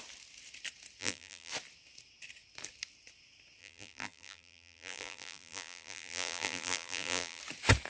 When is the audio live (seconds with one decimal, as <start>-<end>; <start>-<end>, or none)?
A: 0.0-1.0; 1.5-3.6; 7.4-7.9